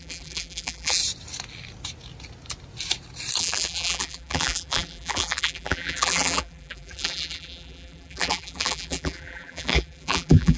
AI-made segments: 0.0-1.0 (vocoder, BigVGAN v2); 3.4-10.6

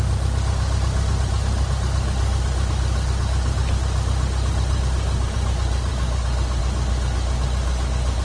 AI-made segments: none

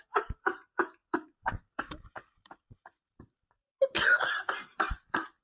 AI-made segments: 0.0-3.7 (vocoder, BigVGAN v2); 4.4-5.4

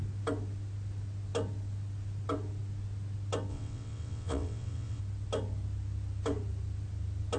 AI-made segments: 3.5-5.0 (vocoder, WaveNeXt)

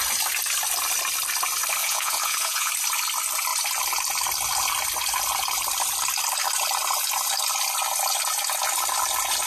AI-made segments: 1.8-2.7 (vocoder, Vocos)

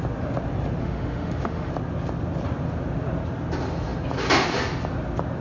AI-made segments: 0.8-1.7 (autoencoder, DAC-VAE)

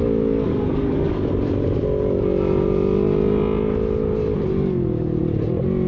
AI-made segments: 0.5-1.3 (codec, DAC); 4.5-5.2

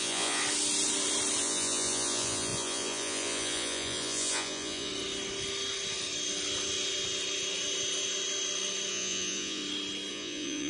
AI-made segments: 0.0-0.4 (vocoder, Vocos); 1.4-4.9; 8.9-9.6; 10.1-10.7